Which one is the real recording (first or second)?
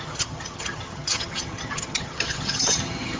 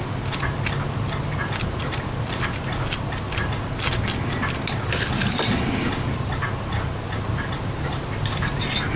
second